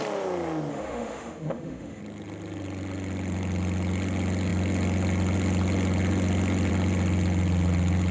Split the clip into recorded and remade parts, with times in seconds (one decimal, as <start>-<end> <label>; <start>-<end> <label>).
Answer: 0.0-0.7 recorded; 0.7-2.0 remade; 2.0-8.1 recorded